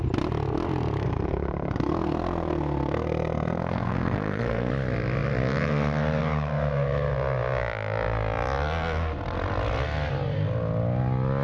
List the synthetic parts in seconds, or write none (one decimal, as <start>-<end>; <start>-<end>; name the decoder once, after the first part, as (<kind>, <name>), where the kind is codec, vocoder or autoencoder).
1.0-4.7 (codec, SNAC)